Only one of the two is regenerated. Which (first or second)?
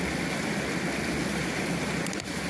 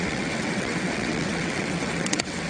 second